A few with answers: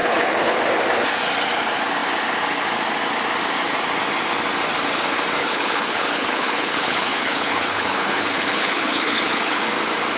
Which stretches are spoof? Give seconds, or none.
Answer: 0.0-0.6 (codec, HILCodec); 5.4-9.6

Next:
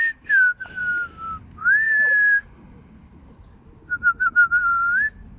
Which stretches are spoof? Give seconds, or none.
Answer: none

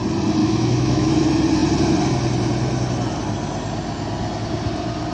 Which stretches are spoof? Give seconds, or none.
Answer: 0.4-1.1 (autoencoder, DAC-VAE)

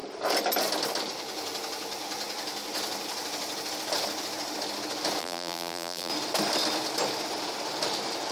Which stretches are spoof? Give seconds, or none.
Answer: 5.2-6.1 (vocoder, BigVGAN v2)

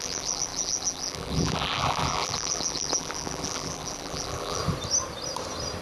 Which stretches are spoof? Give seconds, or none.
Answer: 0.0-4.6 (vocoder, BigVGAN v2)

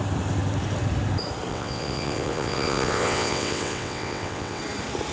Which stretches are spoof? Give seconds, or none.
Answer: 1.5-4.6 (vocoder, WaveNeXt)

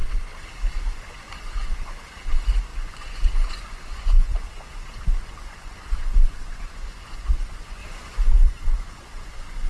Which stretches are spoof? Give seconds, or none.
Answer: 0.7-9.7 (vocoder, Vocos)